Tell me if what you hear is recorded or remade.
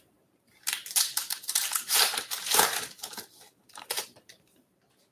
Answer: remade